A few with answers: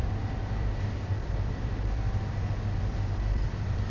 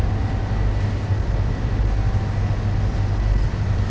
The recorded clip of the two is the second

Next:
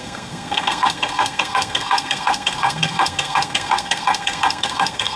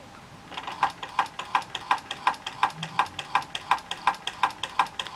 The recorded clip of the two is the second